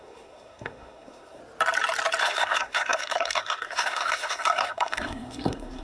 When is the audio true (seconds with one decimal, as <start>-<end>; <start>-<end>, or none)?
1.4-2.2